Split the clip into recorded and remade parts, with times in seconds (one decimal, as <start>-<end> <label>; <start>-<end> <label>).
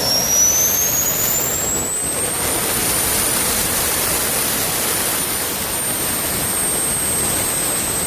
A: 0.0-2.8 recorded; 2.8-4.1 remade; 4.1-8.1 recorded